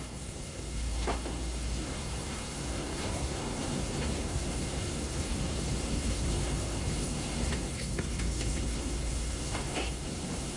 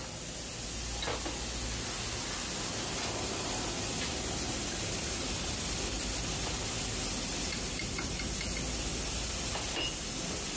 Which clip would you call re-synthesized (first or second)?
first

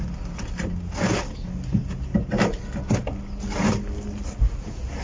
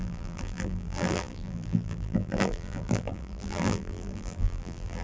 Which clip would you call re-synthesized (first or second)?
second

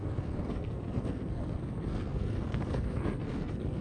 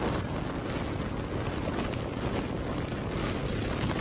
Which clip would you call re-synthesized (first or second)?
first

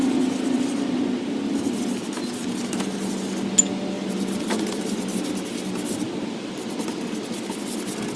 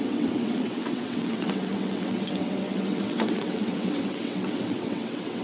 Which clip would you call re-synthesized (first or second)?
second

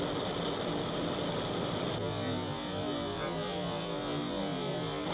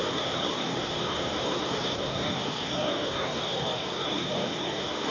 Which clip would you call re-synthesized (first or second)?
second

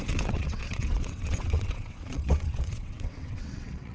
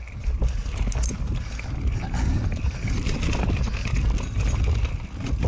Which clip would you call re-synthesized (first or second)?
first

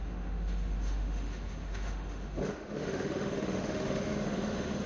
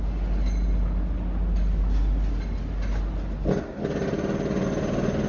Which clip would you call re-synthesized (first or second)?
first